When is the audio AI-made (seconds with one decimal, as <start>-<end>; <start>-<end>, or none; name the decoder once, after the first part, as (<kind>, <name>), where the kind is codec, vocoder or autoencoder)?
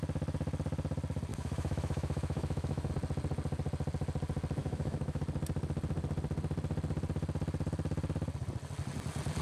1.3-2.9 (autoencoder, DAC-VAE); 4.6-5.2